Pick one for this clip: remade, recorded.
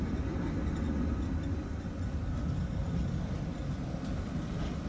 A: recorded